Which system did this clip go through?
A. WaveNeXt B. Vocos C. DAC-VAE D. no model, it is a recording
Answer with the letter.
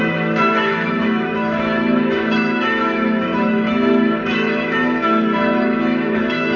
C